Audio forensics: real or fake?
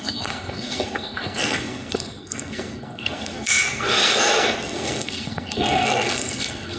fake